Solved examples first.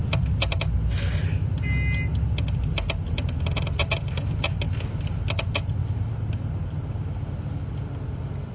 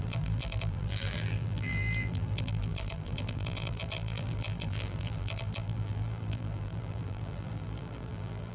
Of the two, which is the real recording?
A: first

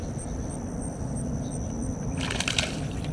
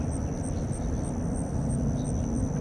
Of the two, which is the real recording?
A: second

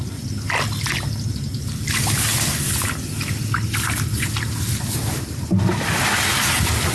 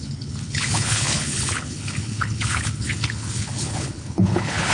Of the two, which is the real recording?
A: first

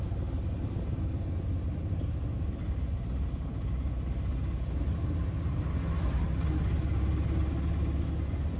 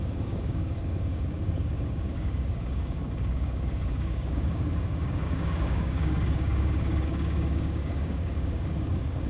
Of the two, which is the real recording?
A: first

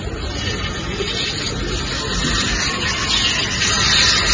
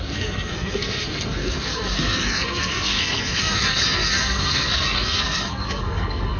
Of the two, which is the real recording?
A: first